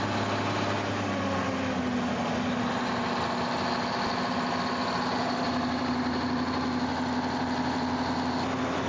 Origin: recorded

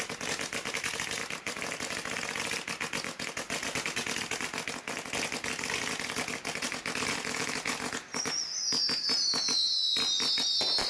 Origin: recorded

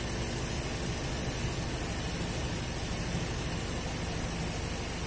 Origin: recorded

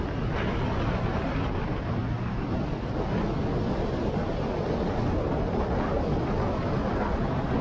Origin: recorded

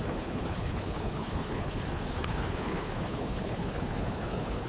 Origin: remade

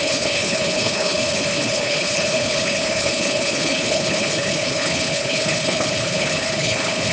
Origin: remade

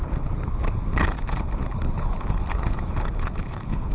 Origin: remade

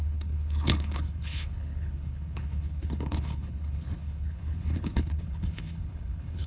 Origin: remade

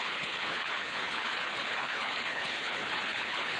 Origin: remade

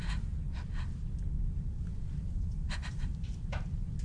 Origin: recorded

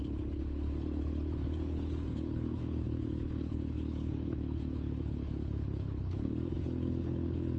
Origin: remade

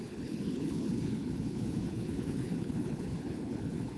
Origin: remade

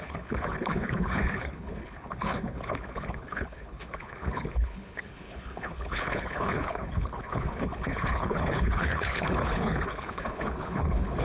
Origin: remade